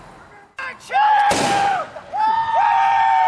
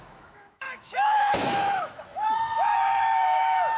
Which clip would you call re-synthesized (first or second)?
second